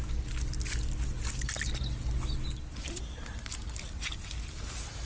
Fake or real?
real